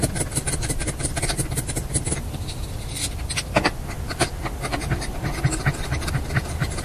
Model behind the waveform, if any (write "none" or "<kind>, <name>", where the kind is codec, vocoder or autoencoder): vocoder, BigVGAN v2